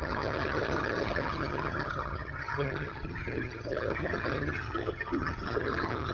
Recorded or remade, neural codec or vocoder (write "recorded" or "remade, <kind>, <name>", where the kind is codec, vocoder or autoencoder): remade, vocoder, HiFi-GAN